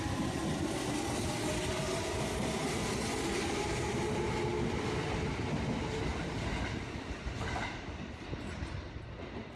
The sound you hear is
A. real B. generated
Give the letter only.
A